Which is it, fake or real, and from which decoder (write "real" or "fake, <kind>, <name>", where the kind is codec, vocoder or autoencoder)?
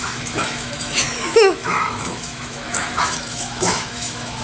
fake, autoencoder, DAC-VAE